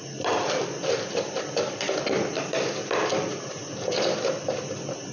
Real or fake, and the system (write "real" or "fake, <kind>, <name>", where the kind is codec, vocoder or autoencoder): real